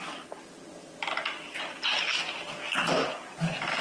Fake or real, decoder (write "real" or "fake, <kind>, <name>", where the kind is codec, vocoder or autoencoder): real